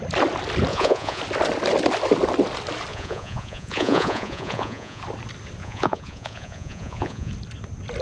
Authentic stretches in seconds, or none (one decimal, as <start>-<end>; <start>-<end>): 0.0-0.7; 1.2-2.9; 5.0-5.6; 7.3-8.0